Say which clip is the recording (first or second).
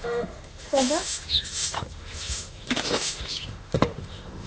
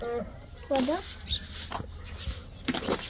second